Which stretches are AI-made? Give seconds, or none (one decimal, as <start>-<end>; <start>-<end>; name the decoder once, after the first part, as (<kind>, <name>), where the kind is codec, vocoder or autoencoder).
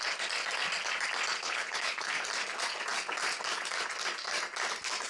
1.3-2.1 (codec, HILCodec)